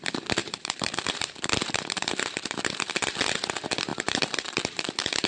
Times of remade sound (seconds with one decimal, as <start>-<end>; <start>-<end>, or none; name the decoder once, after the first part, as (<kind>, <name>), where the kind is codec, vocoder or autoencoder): 0.4-2.9 (vocoder, BigVGAN v2); 3.9-5.3